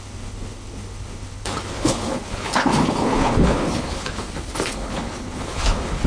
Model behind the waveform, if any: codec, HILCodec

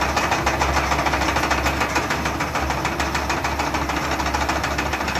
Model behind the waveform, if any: none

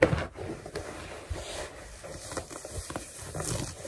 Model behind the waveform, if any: none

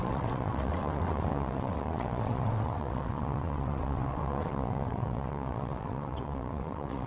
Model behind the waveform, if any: vocoder, WaveNeXt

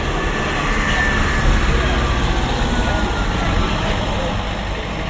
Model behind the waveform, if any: none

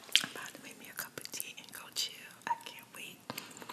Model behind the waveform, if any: none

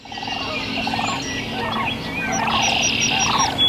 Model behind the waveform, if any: none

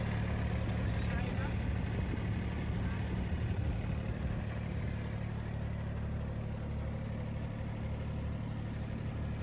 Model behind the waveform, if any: none